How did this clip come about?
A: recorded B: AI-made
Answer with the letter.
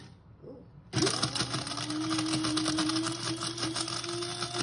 A